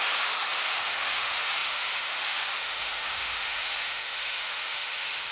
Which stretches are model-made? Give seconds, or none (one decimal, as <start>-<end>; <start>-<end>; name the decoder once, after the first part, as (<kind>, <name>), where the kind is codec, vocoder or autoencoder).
0.0-5.3 (autoencoder, DAC-VAE)